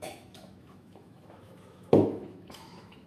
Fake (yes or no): yes